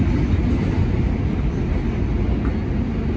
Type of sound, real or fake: real